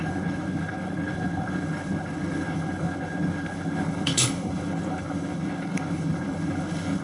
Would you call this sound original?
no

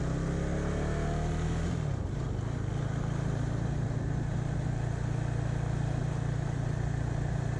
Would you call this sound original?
yes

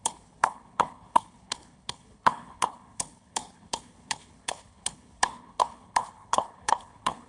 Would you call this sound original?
no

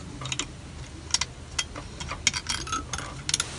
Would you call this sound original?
yes